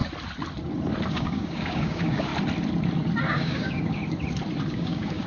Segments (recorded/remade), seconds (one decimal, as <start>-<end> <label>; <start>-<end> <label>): 0.0-1.1 recorded; 1.1-2.3 remade; 2.3-3.3 recorded; 3.3-4.0 remade; 4.0-4.7 recorded; 4.7-5.3 remade